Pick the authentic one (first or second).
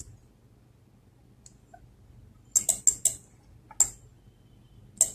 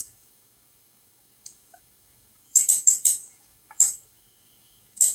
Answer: first